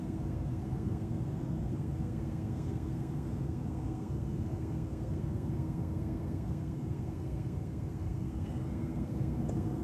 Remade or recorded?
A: remade